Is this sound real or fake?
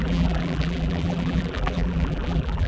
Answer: fake